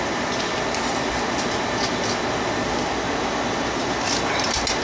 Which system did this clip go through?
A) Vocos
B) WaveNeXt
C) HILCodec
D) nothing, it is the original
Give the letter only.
D